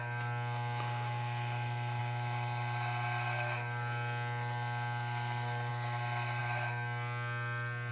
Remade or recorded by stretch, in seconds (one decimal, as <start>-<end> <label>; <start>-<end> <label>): 0.0-7.9 recorded